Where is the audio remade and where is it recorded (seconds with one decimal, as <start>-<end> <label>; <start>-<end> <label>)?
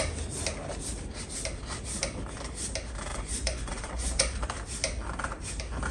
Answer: 0.0-3.1 recorded; 3.1-4.4 remade; 4.4-5.9 recorded